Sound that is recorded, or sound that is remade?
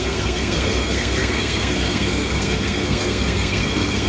remade